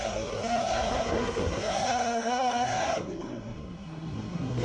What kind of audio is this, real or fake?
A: fake